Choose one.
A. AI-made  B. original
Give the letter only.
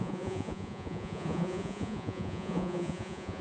A